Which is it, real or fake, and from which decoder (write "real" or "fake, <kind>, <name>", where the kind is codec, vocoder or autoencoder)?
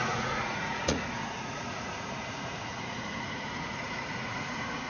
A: fake, vocoder, Vocos